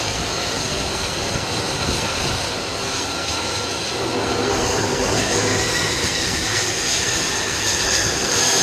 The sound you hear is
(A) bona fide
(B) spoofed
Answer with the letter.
B